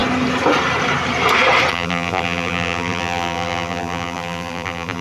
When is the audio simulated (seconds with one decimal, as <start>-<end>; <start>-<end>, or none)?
1.7-5.0